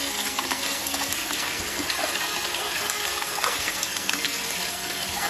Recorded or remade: remade